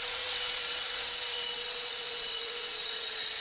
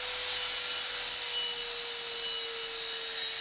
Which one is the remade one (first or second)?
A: first